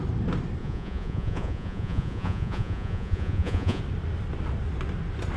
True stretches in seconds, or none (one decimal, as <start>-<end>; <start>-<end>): 0.0-0.6; 3.8-5.4